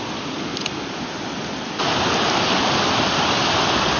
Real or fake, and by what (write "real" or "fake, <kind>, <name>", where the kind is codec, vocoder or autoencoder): real